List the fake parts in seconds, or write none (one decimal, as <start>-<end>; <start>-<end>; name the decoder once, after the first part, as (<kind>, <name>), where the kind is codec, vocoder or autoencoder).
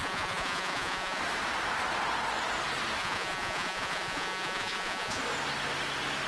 0.0-1.2 (vocoder, Vocos); 3.0-5.2